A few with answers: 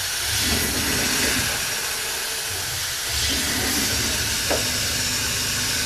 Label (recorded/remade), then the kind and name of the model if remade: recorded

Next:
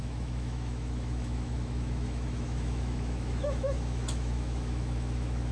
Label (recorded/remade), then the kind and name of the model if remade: remade, autoencoder, DAC-VAE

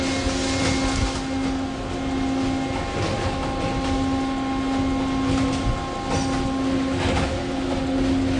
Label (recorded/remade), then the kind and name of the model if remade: recorded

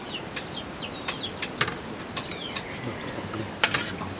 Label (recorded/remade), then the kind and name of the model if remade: recorded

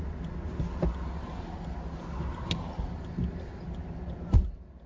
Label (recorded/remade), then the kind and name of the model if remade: recorded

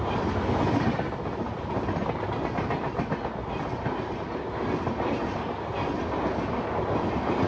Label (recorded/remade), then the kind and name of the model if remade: recorded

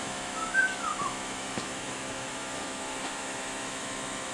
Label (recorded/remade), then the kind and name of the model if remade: remade, autoencoder, DAC-VAE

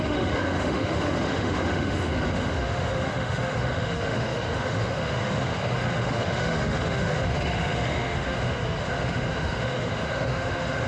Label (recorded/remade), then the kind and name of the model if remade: remade, autoencoder, DAC-VAE